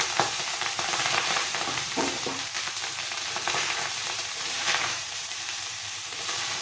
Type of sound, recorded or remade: remade